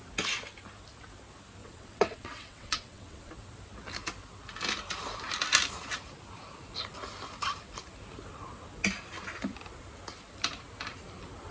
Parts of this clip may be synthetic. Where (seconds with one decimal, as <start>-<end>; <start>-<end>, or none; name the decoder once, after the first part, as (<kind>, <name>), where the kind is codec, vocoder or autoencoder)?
1.6-3.3 (vocoder, WaveNeXt)